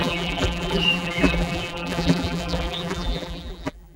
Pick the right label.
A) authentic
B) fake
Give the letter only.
B